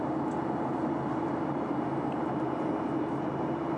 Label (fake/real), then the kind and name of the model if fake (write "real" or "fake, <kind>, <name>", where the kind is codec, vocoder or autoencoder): real